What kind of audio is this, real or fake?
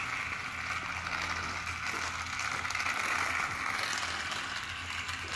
real